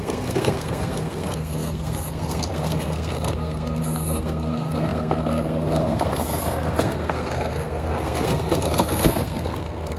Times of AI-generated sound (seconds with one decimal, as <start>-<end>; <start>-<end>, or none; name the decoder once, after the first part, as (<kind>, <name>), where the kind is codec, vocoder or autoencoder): 0.0-10.0 (codec, SNAC)